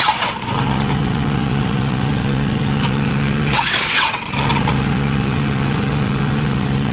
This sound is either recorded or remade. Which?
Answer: remade